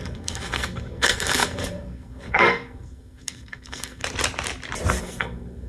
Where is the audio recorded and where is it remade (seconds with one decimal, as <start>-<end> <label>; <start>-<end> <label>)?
0.0-4.0 remade; 4.0-5.0 recorded; 5.0-5.7 remade